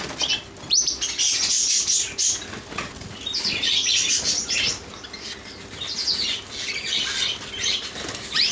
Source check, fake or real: real